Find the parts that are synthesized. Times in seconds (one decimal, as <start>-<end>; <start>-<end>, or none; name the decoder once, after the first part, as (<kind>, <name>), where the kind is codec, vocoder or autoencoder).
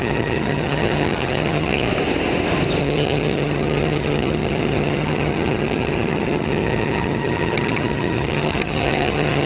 0.0-1.9 (vocoder, HiFi-GAN); 2.8-9.5